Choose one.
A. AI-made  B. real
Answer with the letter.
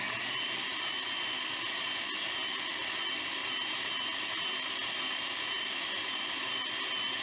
B